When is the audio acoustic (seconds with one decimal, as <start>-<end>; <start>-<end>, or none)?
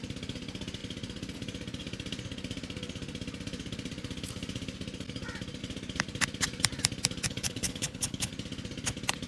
0.0-7.3; 8.3-9.3